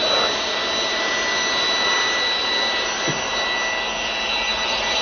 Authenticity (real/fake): real